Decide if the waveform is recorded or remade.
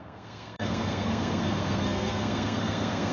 remade